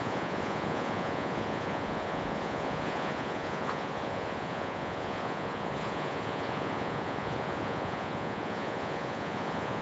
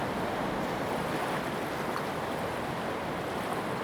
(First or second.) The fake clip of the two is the first